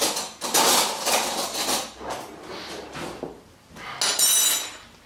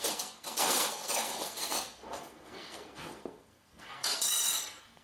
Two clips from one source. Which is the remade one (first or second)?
second